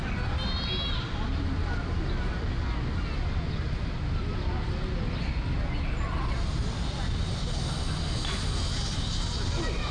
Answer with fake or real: real